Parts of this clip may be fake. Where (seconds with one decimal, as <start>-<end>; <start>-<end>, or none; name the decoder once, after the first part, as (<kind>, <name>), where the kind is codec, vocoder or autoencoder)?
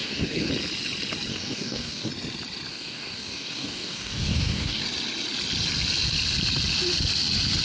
0.0-0.5 (codec, DAC); 1.3-2.1; 2.7-4.8